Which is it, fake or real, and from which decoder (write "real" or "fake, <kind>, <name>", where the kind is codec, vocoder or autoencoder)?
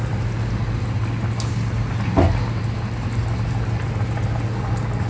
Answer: real